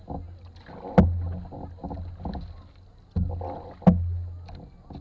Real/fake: real